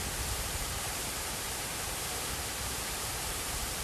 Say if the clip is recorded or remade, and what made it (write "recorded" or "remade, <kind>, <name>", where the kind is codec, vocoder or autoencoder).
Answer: remade, vocoder, BigVGAN v2